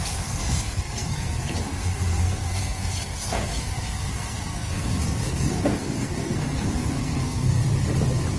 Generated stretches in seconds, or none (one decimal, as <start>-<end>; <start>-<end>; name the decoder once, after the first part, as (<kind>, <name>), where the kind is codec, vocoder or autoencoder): 0.0-7.6 (codec, SNAC)